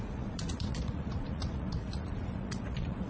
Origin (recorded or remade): remade